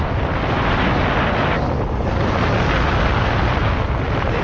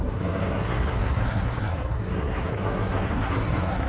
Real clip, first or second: first